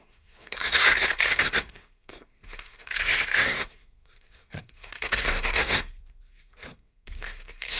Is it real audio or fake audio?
fake